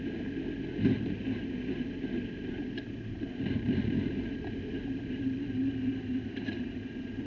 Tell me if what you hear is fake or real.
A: real